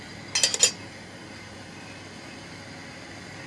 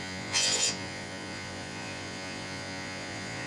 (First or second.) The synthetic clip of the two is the second